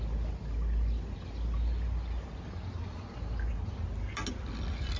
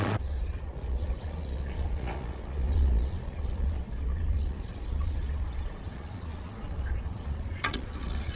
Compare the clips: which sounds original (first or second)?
first